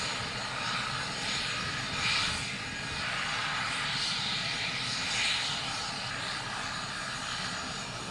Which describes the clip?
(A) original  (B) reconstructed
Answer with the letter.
A